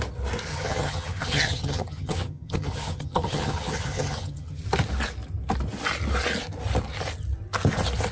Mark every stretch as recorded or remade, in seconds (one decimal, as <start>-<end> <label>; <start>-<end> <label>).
0.0-0.5 recorded; 0.5-4.6 remade; 4.6-8.1 recorded